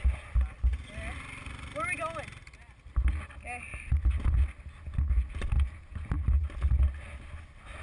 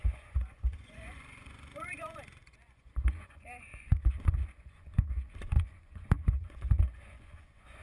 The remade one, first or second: second